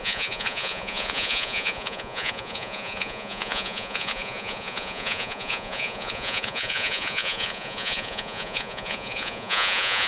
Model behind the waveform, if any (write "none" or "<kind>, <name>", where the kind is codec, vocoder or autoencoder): vocoder, Vocos